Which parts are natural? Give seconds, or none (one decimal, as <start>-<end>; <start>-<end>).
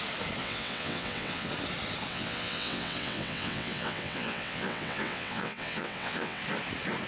0.0-0.4; 1.5-2.1; 6.4-7.1